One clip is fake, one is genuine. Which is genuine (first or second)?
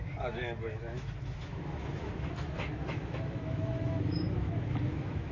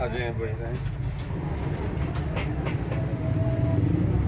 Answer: second